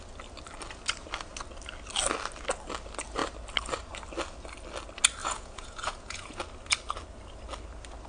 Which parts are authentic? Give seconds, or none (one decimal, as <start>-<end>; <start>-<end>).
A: 0.0-5.2; 6.4-8.1